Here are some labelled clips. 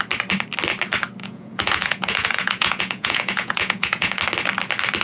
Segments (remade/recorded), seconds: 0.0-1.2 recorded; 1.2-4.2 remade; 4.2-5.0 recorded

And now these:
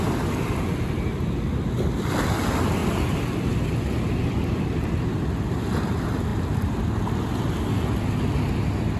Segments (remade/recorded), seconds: 0.0-9.0 recorded

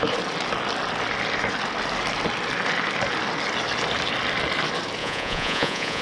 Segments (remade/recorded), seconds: 0.0-5.0 recorded; 5.0-6.0 remade

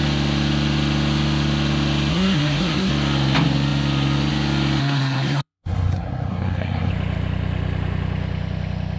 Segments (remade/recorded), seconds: 0.0-2.1 recorded; 2.1-2.9 remade; 2.9-4.8 recorded; 4.8-6.9 remade; 6.9-9.0 recorded

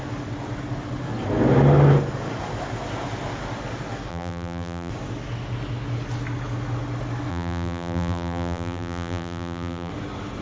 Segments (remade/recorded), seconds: 0.0-4.1 recorded; 4.1-4.9 remade; 4.9-7.3 recorded; 7.3-9.9 remade; 9.9-10.4 recorded